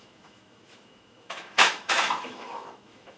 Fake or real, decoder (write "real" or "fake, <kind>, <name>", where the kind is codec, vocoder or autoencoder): fake, autoencoder, DAC-VAE